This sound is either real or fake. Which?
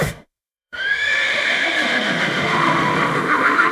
fake